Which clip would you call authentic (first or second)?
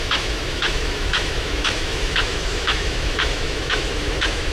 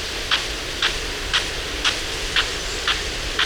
second